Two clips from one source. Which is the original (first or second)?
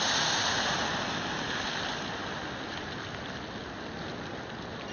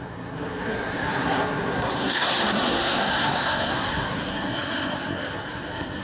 first